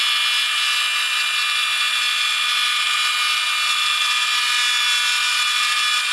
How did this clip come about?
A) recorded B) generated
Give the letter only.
A